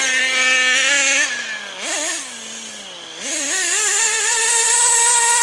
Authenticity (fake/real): real